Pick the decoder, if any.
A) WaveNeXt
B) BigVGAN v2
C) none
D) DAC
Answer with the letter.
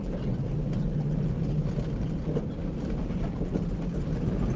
C